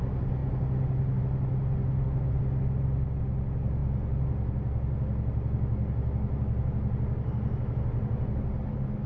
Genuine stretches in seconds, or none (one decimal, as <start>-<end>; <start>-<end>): 0.0-9.1